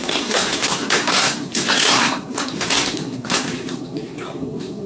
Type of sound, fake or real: fake